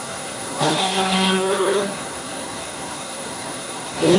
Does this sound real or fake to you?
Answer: fake